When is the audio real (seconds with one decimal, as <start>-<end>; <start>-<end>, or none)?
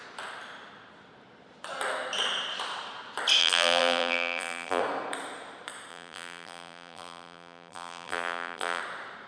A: 0.0-3.4; 4.8-5.9; 8.8-9.3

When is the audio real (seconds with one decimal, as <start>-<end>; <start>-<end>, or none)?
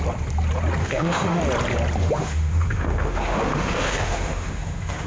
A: 0.0-0.8; 1.4-2.0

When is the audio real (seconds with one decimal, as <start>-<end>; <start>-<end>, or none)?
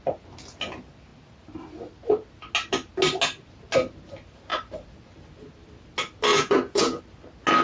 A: 0.0-6.3; 7.0-7.6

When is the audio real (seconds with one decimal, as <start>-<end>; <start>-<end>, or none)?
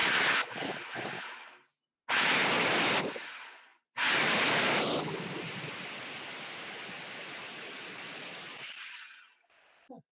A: 0.0-3.7; 6.7-7.4; 9.3-10.1